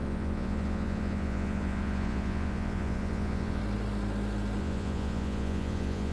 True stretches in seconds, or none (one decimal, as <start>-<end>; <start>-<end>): 3.6-4.6